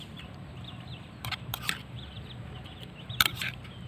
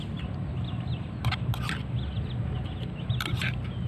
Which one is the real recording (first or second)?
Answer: second